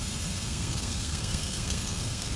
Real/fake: fake